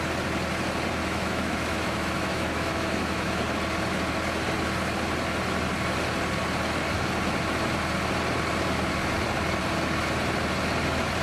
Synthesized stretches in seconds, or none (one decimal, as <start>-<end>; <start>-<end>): 1.0-3.4